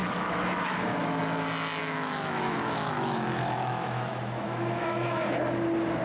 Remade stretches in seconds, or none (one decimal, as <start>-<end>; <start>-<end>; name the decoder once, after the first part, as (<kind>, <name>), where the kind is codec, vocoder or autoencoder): 0.0-1.2 (autoencoder, DAC-VAE); 1.8-5.4